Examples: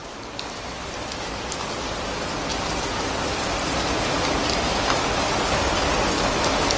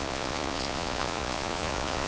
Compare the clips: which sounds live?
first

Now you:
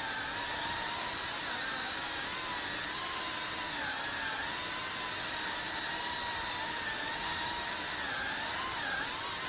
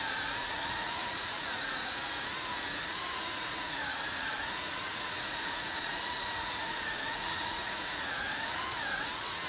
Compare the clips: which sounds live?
first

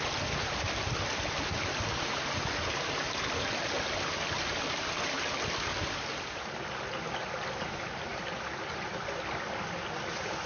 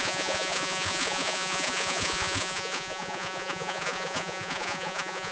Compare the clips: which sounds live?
first